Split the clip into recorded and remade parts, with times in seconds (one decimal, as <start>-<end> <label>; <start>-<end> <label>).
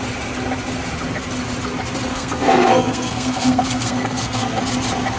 0.0-2.1 recorded; 2.1-4.6 remade; 4.6-5.2 recorded